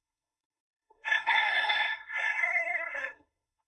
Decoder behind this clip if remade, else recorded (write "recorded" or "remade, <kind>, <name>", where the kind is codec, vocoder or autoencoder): remade, codec, SNAC